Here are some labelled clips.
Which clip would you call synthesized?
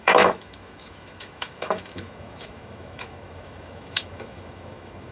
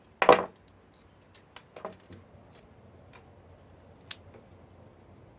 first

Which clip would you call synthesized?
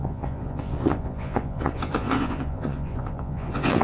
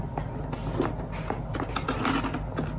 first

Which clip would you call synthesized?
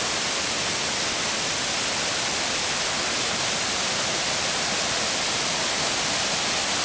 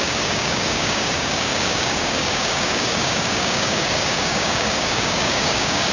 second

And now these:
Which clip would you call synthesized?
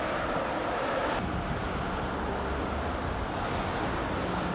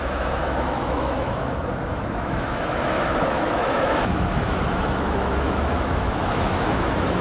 second